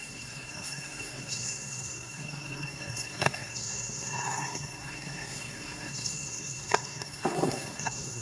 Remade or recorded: remade